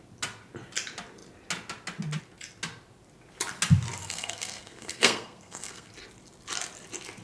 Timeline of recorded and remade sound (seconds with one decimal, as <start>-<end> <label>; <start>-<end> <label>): 0.0-4.0 recorded; 4.0-5.9 remade; 5.9-7.2 recorded